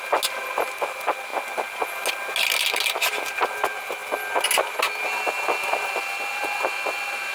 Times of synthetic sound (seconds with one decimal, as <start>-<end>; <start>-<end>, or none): none